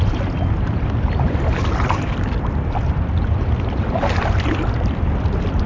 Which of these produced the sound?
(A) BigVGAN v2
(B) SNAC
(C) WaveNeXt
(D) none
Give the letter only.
A